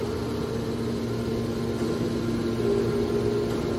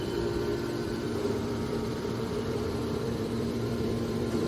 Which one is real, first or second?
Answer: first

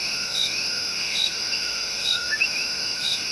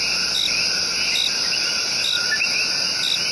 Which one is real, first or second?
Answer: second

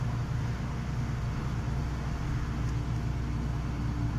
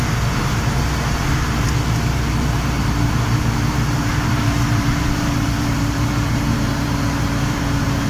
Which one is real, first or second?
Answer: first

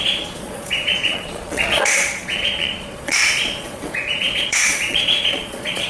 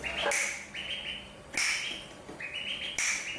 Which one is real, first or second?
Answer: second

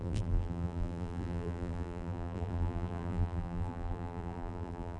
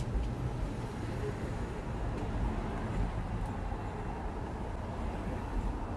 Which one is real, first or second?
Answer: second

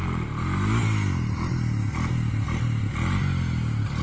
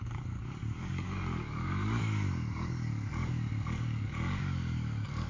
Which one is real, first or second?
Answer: first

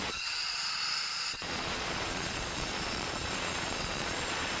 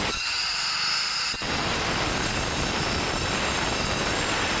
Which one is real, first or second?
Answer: second